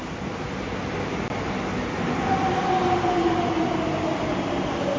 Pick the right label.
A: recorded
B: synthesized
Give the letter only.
A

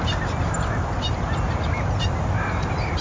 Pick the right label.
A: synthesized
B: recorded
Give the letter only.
B